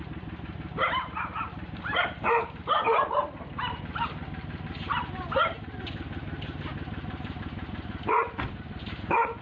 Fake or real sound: fake